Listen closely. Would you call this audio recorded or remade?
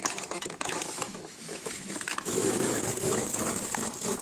remade